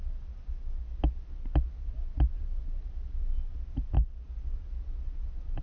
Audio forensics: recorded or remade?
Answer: recorded